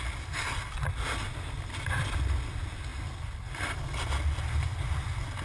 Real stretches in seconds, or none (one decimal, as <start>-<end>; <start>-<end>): 0.0-5.4

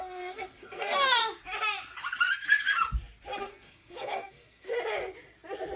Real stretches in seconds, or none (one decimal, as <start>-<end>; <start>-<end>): 1.2-3.4; 4.7-5.8

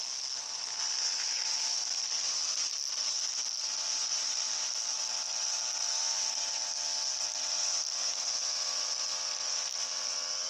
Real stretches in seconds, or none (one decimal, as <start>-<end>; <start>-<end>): 0.0-1.2; 1.8-5.8; 6.3-10.5